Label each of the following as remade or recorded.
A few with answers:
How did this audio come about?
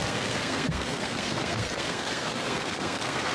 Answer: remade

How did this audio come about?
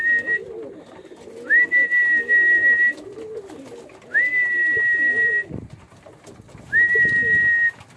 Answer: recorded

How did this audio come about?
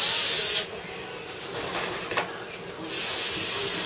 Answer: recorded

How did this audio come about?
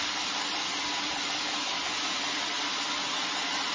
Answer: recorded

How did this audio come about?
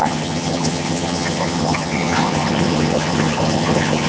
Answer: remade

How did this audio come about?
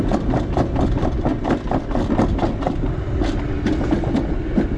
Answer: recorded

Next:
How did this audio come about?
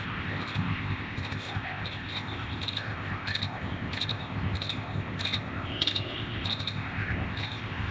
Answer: remade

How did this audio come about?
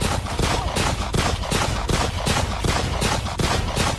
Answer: recorded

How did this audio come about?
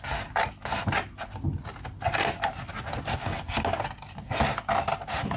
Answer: recorded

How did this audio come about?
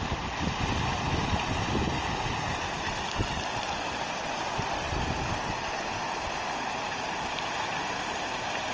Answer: remade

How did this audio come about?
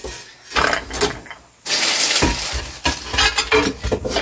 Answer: recorded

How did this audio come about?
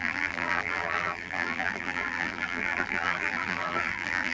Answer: remade